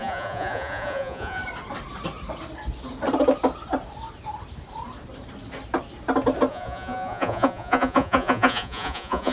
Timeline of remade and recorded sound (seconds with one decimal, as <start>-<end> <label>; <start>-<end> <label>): 0.0-1.4 remade; 1.4-6.5 recorded; 6.5-9.3 remade